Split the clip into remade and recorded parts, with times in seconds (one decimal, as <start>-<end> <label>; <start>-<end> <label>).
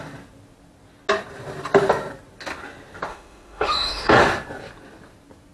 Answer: 0.0-3.1 recorded; 3.1-4.2 remade; 4.2-5.5 recorded